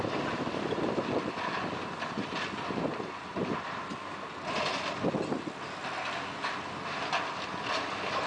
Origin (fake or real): real